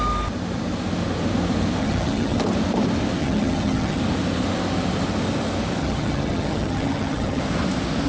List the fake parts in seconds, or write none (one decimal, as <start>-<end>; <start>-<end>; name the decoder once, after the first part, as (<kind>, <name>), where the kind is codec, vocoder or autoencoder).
1.8-2.4 (vocoder, HiFi-GAN); 3.2-4.0; 5.8-7.4